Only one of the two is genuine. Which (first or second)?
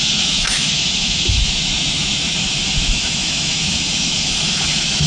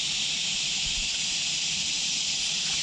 second